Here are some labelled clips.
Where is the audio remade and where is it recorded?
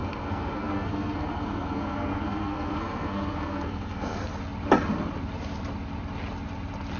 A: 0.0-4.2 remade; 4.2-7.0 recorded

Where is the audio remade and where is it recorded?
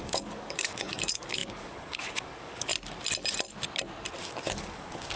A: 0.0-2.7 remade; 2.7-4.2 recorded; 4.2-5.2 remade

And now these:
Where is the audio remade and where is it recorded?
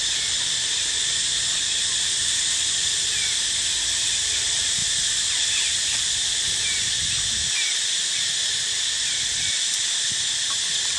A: 0.0-11.0 remade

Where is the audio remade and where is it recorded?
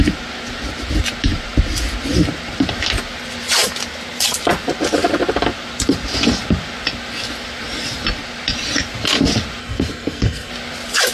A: 0.0-9.6 recorded; 9.6-10.5 remade; 10.5-11.1 recorded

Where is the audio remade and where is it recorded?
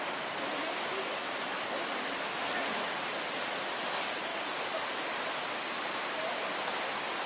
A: 0.0-7.3 recorded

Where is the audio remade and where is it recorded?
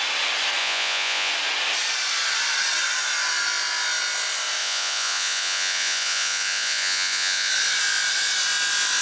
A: 0.0-0.6 recorded; 0.6-1.3 remade; 1.3-4.6 recorded; 4.6-7.5 remade; 7.5-9.0 recorded